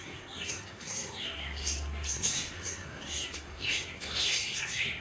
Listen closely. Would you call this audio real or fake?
fake